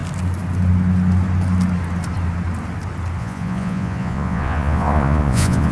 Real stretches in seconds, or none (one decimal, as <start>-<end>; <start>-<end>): 0.0-3.2

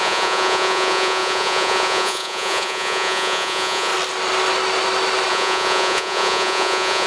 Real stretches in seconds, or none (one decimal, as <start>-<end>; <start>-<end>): 3.9-5.3

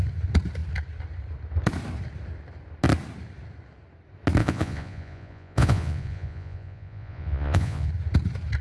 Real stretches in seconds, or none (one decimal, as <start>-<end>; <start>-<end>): 0.0-4.4; 7.9-8.6

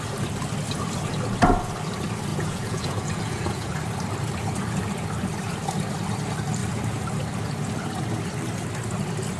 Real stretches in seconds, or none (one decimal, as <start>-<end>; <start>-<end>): 0.0-2.3; 3.7-9.4

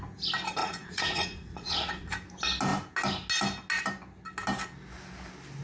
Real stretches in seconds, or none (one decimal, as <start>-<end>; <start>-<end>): 0.0-0.6; 2.1-5.6